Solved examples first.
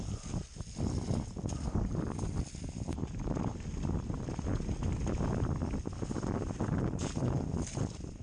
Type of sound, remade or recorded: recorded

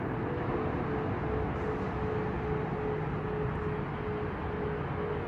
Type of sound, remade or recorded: recorded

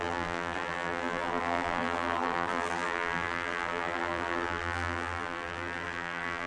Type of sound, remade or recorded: remade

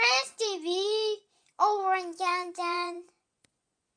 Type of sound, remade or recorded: remade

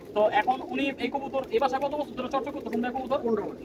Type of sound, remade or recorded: recorded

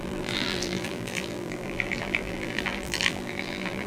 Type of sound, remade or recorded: remade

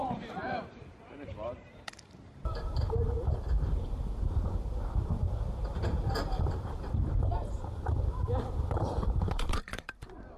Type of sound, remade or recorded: remade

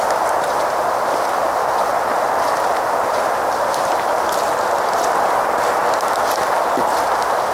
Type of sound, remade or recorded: recorded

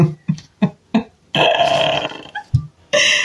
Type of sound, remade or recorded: recorded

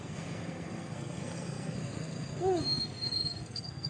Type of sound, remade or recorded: remade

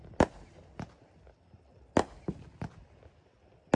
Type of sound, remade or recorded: recorded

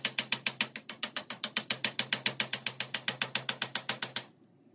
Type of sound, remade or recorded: recorded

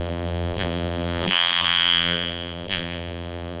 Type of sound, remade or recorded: remade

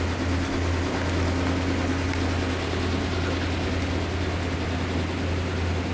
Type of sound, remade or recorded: recorded